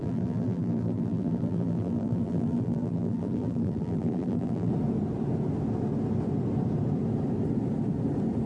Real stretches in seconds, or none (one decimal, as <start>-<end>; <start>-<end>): 4.7-8.5